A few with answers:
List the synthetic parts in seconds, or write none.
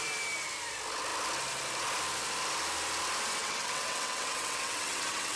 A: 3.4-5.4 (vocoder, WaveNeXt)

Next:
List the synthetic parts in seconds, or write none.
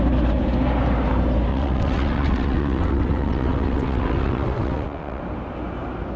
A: 1.5-5.2 (vocoder, WaveNeXt)